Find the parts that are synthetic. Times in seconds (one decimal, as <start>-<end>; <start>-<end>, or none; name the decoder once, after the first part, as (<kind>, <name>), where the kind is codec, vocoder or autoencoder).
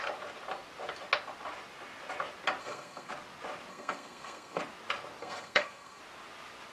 2.6-3.1 (codec, SNAC); 3.7-4.6; 5.2-6.0